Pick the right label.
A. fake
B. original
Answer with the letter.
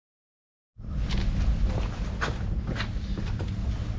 B